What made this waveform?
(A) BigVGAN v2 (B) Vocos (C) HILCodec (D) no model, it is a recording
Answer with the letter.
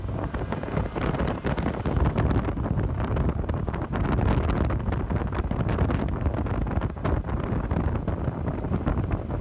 D